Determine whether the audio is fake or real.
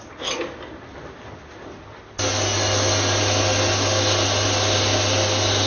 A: real